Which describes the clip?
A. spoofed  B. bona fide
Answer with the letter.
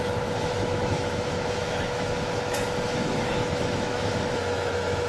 A